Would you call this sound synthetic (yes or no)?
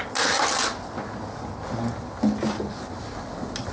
no